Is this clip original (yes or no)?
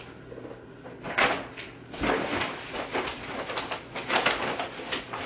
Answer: yes